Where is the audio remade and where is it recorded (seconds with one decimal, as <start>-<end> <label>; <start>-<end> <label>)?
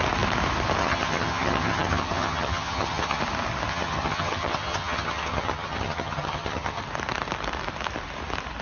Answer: 0.0-0.8 recorded; 0.8-3.2 remade; 3.2-3.7 recorded; 3.7-6.8 remade; 6.8-8.6 recorded